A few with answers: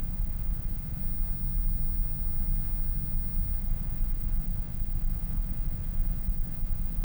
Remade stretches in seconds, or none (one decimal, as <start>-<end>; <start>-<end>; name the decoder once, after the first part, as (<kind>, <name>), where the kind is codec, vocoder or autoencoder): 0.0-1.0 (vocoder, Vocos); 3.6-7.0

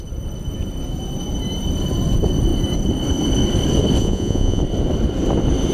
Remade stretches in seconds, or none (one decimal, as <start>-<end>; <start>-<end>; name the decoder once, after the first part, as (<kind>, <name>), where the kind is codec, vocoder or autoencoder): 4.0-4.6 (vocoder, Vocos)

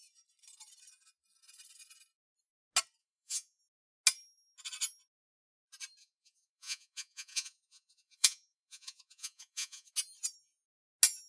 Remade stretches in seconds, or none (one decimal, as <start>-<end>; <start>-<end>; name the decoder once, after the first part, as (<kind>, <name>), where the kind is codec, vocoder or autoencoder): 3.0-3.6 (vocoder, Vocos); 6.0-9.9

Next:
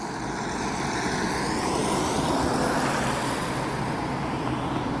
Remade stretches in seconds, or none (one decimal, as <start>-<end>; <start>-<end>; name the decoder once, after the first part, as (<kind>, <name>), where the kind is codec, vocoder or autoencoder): none